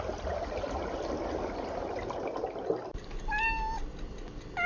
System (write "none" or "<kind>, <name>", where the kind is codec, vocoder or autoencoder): none